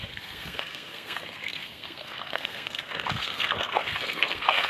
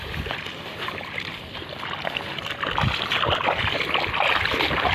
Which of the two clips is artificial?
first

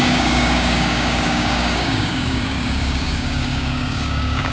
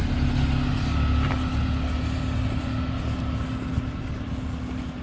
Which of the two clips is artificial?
first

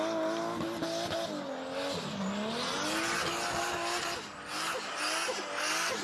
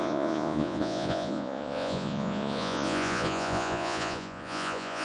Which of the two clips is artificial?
second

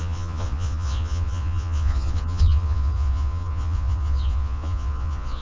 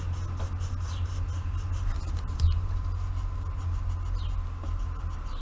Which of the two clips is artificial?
first